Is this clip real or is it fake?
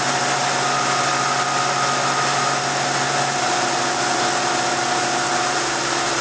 real